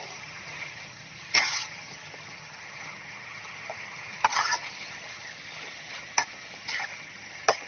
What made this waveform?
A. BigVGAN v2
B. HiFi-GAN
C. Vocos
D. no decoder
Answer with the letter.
B